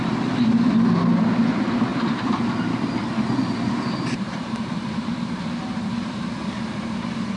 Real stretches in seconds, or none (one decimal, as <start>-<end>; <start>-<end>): 0.0-1.9; 6.3-7.4